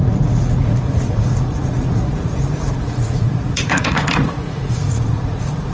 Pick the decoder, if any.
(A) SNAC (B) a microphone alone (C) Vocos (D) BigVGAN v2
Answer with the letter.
C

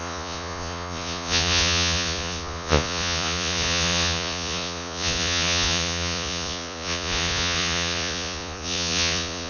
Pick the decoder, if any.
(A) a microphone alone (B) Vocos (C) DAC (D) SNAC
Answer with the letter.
B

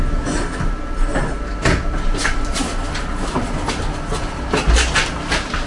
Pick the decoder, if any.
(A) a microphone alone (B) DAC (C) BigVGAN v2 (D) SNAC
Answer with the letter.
A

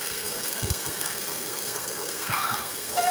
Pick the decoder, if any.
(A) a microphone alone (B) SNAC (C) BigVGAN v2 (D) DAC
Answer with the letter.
B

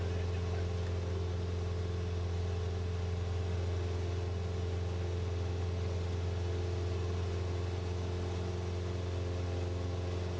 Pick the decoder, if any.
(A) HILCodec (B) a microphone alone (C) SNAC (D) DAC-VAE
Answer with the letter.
B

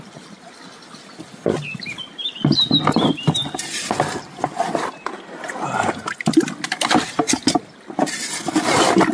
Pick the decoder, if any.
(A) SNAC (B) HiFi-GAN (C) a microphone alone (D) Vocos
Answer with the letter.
C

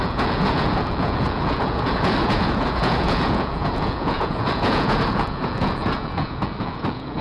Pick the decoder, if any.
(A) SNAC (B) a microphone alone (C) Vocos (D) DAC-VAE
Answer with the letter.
C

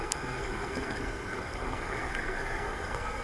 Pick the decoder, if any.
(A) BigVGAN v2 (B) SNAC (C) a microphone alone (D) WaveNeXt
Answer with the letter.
B